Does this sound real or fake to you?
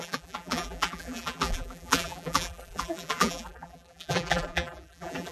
fake